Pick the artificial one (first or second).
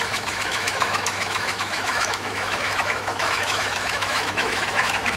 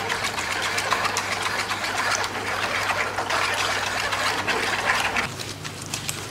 first